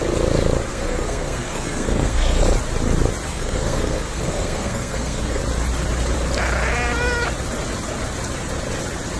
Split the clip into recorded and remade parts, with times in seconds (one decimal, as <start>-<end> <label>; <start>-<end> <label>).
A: 0.0-0.7 recorded; 0.7-2.4 remade; 2.4-3.3 recorded; 3.3-5.4 remade; 5.4-9.2 recorded